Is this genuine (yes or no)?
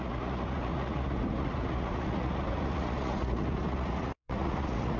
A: no